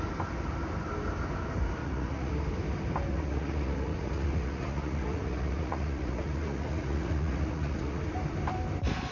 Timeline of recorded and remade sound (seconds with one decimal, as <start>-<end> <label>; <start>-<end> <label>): 0.0-1.8 recorded; 1.8-2.3 remade; 2.3-3.1 recorded; 3.1-8.0 remade; 8.0-9.1 recorded